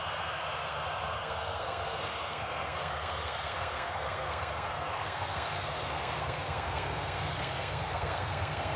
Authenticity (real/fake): fake